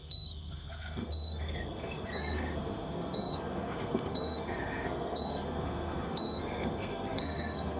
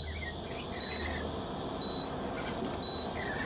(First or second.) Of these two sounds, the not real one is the first